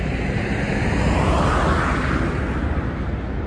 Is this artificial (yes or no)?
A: no